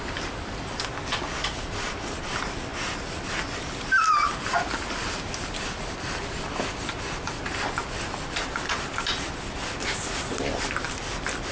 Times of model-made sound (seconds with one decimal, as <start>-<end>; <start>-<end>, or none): none